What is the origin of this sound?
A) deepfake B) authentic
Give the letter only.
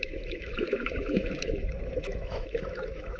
A